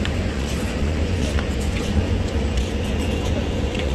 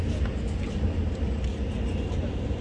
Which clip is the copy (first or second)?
first